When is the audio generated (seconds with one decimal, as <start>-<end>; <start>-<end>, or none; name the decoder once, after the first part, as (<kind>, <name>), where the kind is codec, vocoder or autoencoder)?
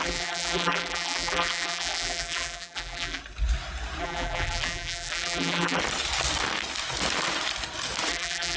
0.0-3.2 (vocoder, BigVGAN v2); 4.0-5.8; 8.1-8.6